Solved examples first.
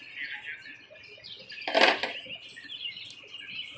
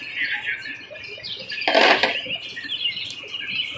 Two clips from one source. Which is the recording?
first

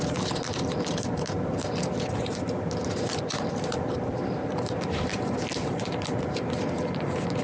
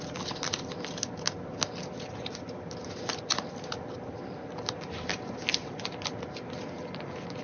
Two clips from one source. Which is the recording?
second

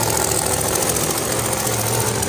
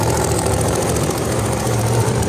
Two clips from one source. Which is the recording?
first